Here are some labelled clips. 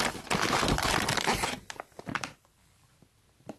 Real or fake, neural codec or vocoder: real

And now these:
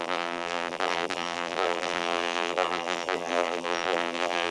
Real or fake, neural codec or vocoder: fake, vocoder, BigVGAN v2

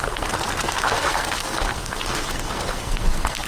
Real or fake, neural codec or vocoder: fake, codec, SNAC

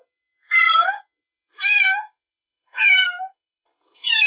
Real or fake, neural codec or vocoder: fake, codec, SNAC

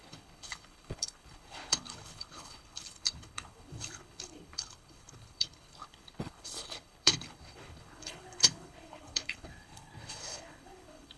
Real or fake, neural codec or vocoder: fake, codec, HILCodec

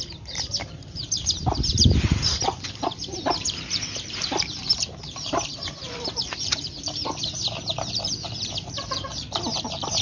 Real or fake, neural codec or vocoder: fake, vocoder, BigVGAN v2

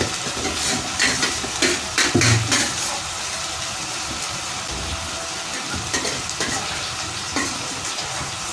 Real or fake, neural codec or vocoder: real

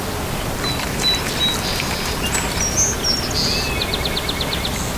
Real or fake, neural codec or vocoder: real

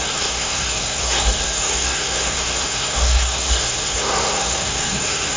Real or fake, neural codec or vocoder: fake, codec, SNAC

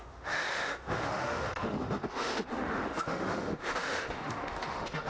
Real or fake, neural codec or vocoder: fake, autoencoder, DAC-VAE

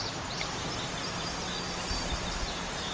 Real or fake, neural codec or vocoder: real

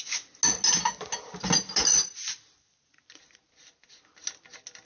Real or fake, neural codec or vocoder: real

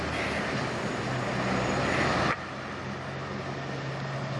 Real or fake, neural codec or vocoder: real